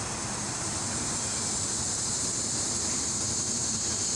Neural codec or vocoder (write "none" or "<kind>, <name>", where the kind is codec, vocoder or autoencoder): none